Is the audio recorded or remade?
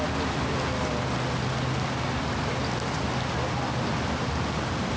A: recorded